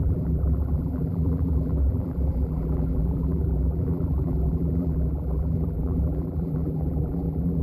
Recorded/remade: remade